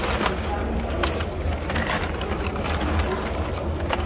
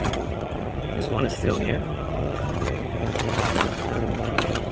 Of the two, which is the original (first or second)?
first